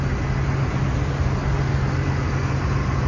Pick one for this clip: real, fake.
real